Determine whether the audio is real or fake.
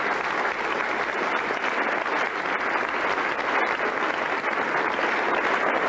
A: real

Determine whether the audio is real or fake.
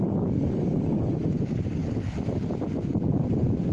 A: real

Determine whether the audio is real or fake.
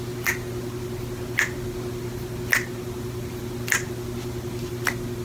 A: real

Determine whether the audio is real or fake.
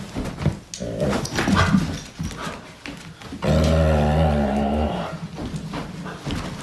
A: real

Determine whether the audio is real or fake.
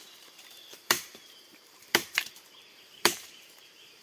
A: fake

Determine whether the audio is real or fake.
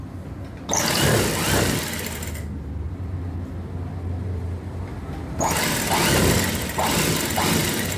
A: real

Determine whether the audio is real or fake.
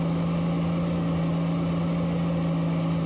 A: real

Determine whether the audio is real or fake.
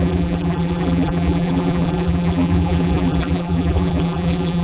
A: fake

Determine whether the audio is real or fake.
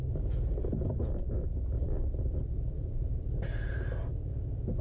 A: fake